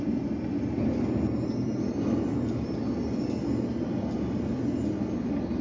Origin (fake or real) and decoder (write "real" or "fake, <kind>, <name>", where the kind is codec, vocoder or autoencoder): real